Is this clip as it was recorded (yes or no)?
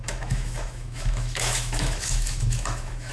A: no